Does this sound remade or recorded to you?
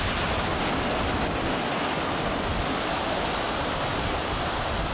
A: recorded